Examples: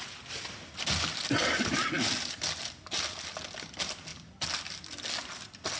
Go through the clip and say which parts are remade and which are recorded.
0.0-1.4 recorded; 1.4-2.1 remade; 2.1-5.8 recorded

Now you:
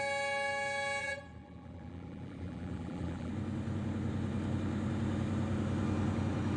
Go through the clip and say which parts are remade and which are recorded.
0.0-1.0 recorded; 1.0-3.3 remade; 3.3-6.6 recorded